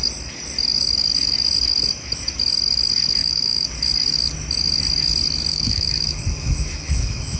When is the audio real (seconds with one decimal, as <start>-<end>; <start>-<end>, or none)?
0.0-3.2; 3.7-5.5